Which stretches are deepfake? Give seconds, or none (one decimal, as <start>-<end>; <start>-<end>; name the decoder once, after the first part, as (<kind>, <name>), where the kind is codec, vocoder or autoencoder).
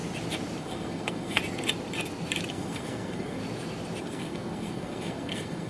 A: 0.6-1.4 (codec, SNAC); 2.5-3.4; 4.0-5.7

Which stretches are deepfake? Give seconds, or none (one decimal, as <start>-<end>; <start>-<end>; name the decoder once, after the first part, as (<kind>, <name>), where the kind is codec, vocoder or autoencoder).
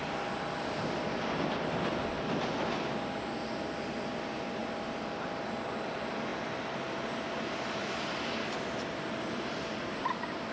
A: 6.3-10.0 (vocoder, BigVGAN v2)